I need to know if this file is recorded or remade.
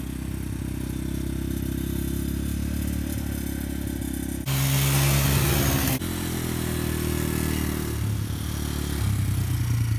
recorded